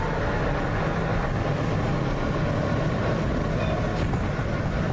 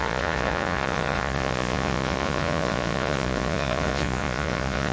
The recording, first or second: first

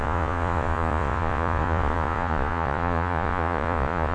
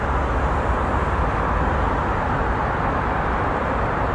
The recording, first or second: second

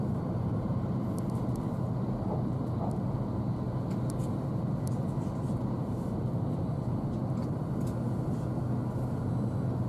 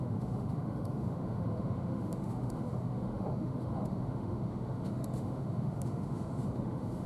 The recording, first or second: first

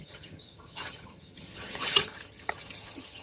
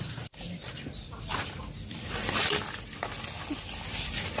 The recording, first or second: second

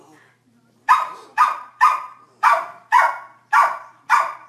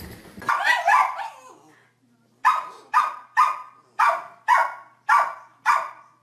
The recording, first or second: second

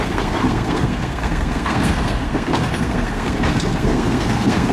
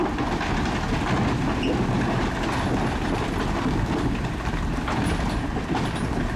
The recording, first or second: second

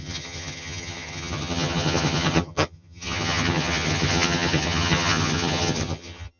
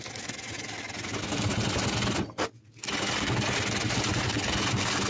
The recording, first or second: second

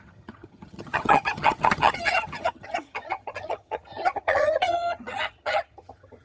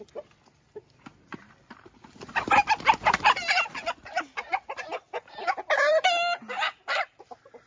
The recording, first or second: second